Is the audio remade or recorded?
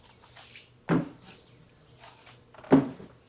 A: recorded